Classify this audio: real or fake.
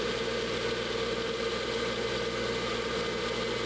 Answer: real